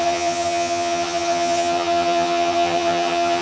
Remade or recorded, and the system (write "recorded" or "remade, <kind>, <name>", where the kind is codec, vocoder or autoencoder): remade, vocoder, HiFi-GAN